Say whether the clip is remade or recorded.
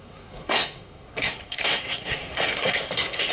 remade